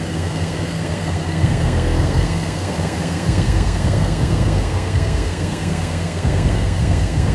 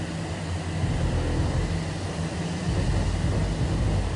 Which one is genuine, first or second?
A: second